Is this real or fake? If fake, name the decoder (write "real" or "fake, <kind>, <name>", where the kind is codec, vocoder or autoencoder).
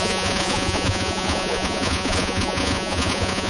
fake, vocoder, Vocos